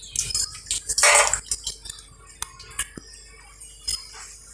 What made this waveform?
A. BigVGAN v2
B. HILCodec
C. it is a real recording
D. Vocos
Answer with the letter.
C